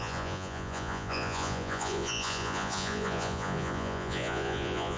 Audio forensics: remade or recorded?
remade